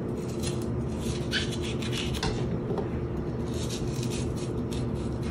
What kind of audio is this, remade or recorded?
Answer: recorded